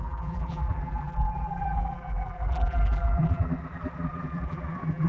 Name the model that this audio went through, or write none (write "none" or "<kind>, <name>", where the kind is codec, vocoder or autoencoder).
vocoder, BigVGAN v2